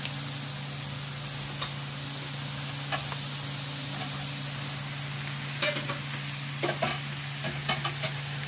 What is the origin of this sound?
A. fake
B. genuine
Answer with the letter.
B